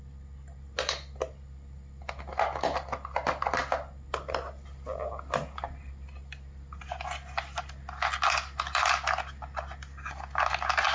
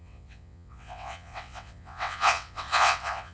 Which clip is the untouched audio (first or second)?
first